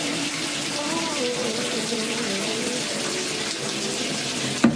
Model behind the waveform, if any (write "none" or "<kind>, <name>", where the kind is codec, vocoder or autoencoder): none